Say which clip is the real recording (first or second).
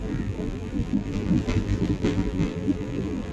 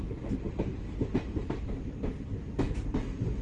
second